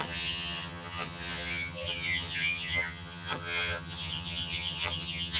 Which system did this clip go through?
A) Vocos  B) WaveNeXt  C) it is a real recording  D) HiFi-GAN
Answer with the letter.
D